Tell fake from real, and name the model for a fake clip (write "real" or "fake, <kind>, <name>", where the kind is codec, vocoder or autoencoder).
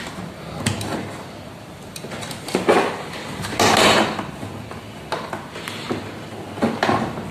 real